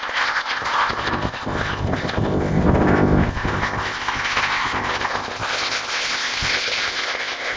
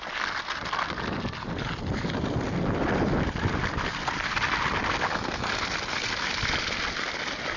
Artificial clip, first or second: first